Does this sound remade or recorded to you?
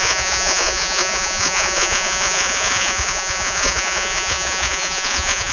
remade